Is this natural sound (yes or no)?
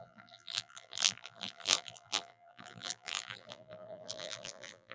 no